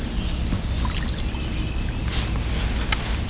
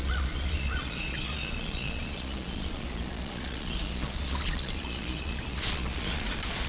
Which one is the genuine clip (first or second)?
first